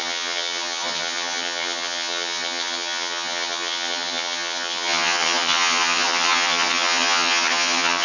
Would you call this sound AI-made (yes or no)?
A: yes